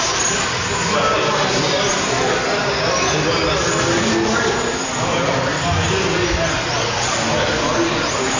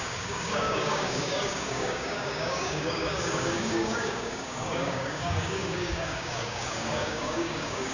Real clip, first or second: first